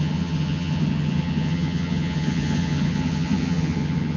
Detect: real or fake fake